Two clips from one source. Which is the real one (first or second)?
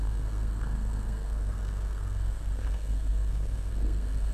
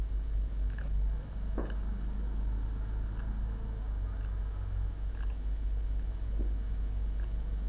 second